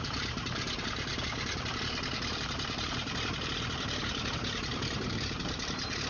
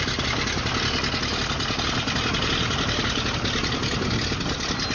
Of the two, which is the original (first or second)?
second